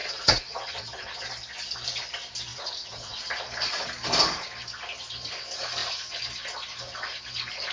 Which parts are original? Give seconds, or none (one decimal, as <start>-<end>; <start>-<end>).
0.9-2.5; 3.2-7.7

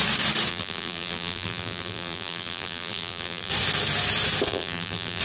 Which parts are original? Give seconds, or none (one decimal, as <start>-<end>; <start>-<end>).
0.0-0.5; 3.5-4.5

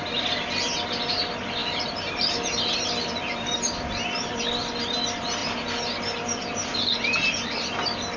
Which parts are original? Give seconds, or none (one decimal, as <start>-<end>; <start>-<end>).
0.0-1.6; 4.6-5.4; 6.4-8.2

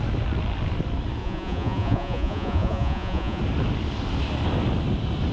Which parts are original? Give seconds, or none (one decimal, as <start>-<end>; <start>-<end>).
0.0-1.2; 3.4-5.3

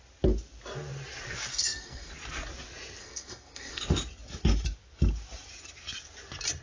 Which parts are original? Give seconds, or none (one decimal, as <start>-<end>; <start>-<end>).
0.0-1.5; 2.1-3.0; 3.8-6.6

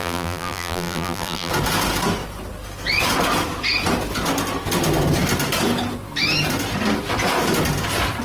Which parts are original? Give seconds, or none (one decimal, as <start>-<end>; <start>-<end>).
1.5-8.2